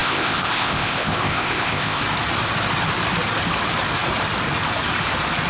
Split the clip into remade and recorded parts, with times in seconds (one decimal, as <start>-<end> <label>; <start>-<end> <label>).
0.0-2.0 remade; 2.0-5.5 recorded